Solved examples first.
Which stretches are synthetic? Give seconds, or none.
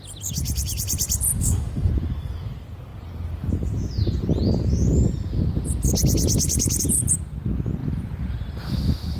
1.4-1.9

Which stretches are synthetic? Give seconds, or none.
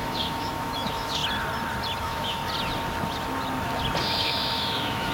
0.0-1.2; 2.0-2.4; 4.0-5.1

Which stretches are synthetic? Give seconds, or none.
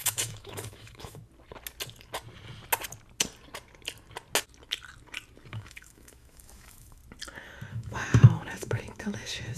0.0-1.2; 5.5-7.0; 7.7-9.6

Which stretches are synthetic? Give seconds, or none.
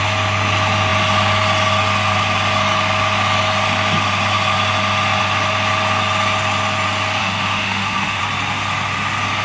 7.2-8.2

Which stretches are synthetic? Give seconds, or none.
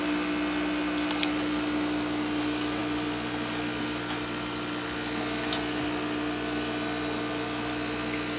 none